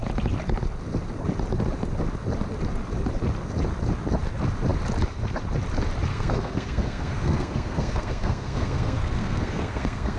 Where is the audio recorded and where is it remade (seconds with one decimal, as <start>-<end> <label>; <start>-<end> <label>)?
0.0-6.1 recorded; 6.1-10.2 remade